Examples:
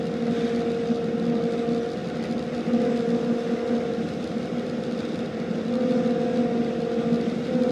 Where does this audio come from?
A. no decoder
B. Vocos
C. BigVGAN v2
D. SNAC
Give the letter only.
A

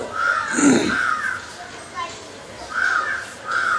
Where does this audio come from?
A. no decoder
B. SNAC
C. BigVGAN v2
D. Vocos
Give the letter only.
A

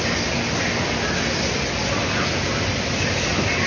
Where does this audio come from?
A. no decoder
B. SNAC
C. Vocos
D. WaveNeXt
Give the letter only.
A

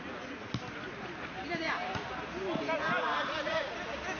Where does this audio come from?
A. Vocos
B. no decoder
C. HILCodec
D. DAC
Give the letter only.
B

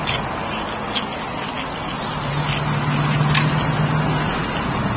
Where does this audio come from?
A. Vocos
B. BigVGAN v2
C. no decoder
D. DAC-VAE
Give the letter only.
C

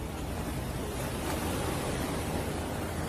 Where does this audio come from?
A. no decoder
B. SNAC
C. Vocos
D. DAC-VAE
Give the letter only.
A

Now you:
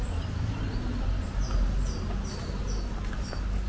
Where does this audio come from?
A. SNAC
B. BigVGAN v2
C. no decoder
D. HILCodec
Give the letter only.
C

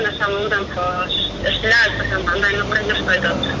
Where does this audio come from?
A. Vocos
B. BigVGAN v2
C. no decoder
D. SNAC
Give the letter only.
C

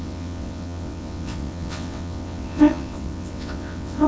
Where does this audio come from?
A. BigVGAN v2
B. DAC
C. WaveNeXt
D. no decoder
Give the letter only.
C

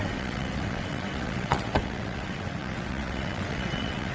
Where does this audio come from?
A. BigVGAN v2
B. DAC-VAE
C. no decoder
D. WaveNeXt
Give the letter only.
D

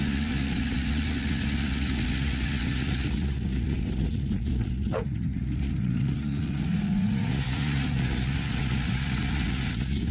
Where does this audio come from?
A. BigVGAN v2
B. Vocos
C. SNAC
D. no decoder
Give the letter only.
B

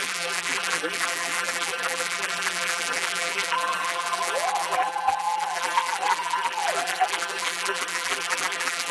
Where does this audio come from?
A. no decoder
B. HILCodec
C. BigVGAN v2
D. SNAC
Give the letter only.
C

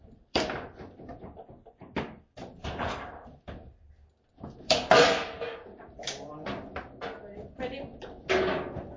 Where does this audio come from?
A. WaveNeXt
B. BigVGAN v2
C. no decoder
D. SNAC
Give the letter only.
B